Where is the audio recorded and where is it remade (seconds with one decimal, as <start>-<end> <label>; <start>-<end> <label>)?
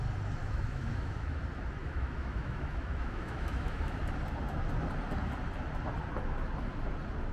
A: 0.0-0.4 recorded; 0.4-1.4 remade; 1.4-1.8 recorded; 1.8-4.0 remade; 4.0-7.3 recorded